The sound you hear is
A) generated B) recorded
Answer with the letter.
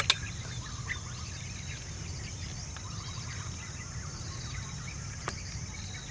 B